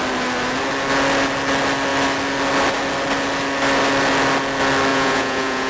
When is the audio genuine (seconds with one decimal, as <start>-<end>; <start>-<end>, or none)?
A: 0.0-4.9